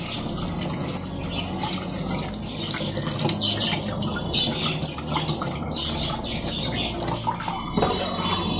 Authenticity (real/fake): real